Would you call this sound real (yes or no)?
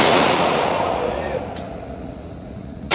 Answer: no